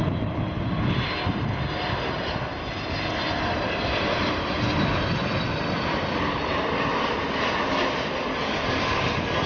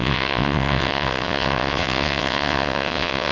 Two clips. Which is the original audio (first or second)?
first